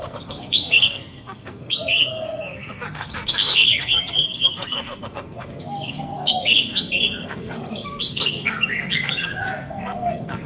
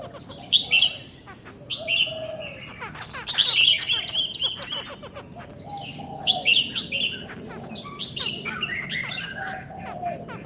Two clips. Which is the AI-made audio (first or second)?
first